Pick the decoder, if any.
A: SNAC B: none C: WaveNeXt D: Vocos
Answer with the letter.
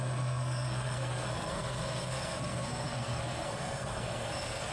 A